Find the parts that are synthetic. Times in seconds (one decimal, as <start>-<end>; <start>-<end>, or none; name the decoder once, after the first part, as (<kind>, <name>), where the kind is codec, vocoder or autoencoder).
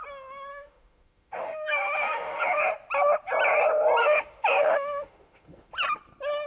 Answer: 0.5-2.6 (autoencoder, DAC-VAE); 4.0-5.7